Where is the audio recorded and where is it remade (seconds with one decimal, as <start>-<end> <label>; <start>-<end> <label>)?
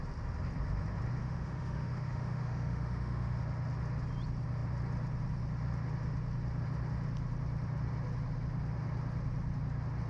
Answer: 0.0-1.2 recorded; 1.2-3.4 remade; 3.4-10.1 recorded